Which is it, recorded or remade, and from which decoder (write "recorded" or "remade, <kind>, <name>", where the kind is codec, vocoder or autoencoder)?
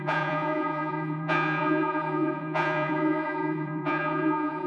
remade, vocoder, Vocos